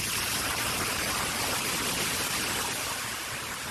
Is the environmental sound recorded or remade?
recorded